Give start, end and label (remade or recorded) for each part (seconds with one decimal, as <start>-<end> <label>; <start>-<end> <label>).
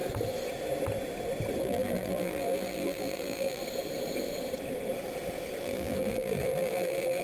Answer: 0.0-1.6 recorded; 1.6-3.6 remade; 3.6-5.6 recorded; 5.6-7.2 remade